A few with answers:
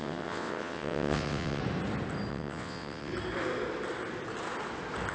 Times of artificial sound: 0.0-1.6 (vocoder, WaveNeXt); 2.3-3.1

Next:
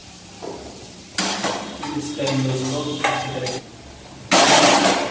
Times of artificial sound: none

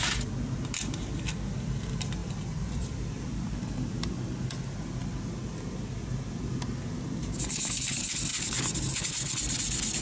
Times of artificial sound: 2.2-3.5 (vocoder, BigVGAN v2); 8.3-10.0

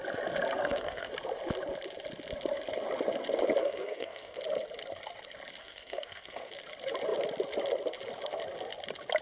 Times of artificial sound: 0.6-1.1 (codec, SNAC); 3.6-4.4; 5.6-6.5

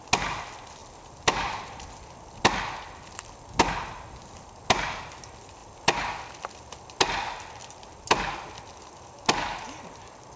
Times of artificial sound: none

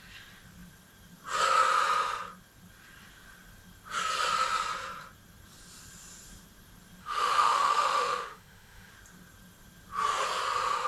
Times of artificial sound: 7.0-8.9 (autoencoder, DAC-VAE)